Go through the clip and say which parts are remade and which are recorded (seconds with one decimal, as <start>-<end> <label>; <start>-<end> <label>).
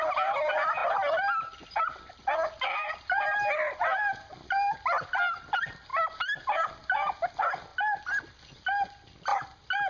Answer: 0.0-9.9 recorded